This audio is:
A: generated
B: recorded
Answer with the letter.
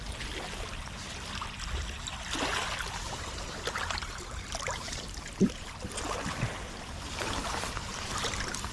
B